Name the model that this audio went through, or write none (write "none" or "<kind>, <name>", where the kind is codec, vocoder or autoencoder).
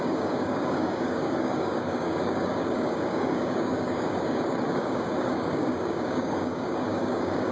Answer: codec, DAC